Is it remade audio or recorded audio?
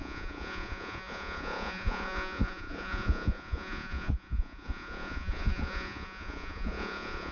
remade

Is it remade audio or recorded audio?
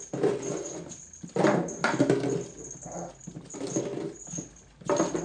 recorded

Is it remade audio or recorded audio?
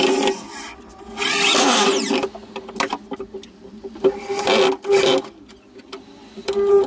recorded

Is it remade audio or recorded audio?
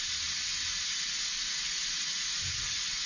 recorded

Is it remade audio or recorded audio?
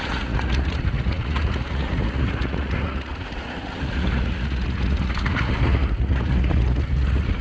remade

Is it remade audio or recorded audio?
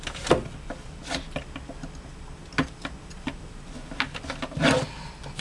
recorded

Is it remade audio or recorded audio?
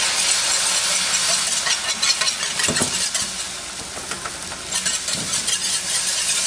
recorded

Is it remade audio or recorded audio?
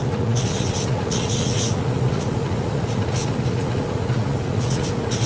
remade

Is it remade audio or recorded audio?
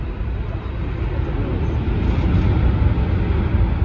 recorded